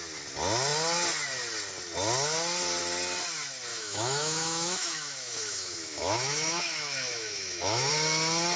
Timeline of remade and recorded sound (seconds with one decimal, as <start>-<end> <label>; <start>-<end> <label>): 0.0-3.7 recorded; 3.7-7.9 remade; 7.9-8.6 recorded